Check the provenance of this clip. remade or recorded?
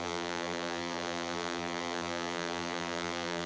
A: remade